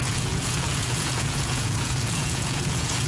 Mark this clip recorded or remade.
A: remade